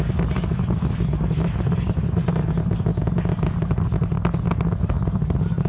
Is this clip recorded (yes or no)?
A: yes